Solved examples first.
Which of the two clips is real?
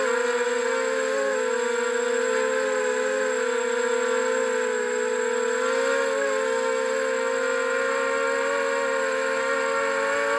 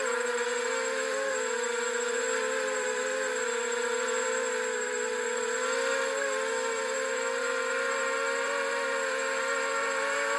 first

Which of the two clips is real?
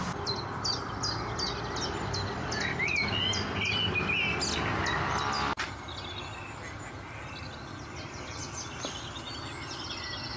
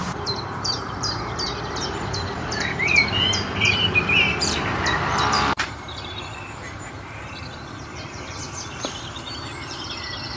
first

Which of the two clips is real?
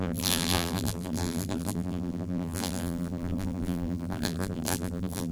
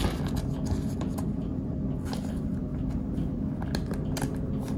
second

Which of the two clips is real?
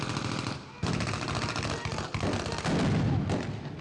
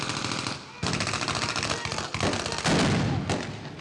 second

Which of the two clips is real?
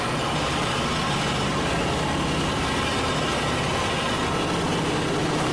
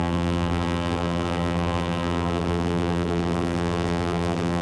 first